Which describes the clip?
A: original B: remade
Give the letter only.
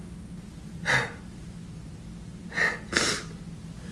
A